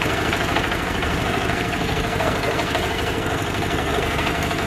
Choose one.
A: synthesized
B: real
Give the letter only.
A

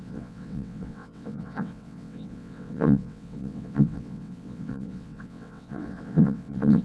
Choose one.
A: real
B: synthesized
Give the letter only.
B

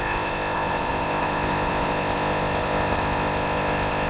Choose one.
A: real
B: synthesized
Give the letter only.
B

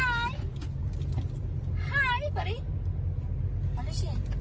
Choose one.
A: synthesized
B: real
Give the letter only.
B